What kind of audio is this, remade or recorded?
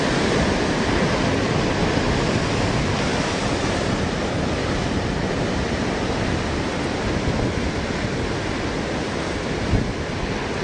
recorded